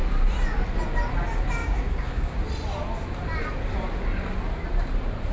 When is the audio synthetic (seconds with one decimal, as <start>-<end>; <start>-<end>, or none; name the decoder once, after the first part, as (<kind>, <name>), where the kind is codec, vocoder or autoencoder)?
1.6-2.4 (codec, DAC)